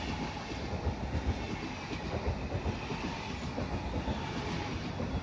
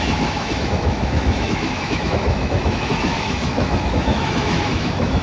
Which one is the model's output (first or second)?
second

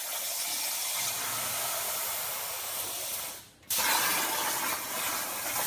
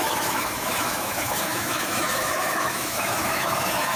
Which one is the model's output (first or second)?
second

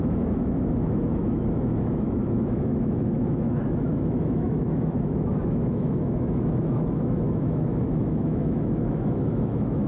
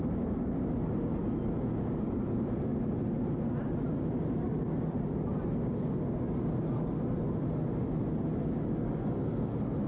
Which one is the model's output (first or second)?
first